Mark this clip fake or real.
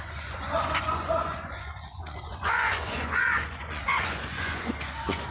fake